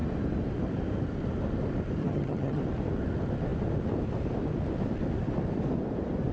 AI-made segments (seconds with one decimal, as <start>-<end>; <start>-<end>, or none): 2.0-2.6